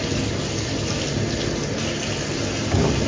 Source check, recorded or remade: recorded